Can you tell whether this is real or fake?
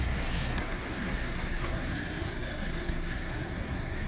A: fake